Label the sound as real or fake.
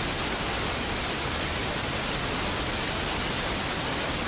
real